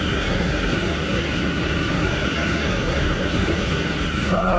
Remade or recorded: remade